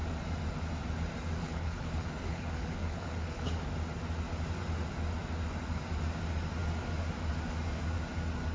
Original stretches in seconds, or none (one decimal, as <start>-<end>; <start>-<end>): 0.0-1.4; 3.7-8.5